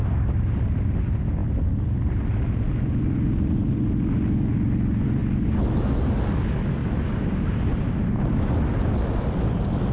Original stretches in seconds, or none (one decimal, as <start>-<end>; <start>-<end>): 0.0-6.8; 7.9-9.9